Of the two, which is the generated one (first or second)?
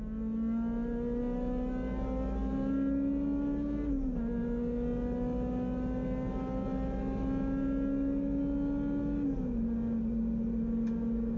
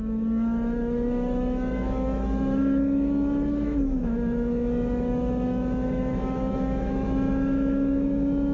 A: second